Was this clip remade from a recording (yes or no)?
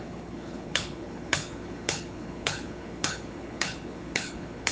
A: yes